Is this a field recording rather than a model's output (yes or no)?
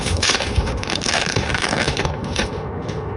no